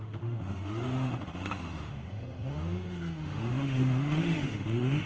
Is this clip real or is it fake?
fake